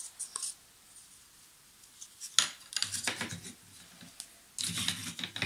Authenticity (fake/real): real